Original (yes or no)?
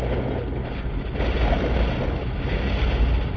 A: yes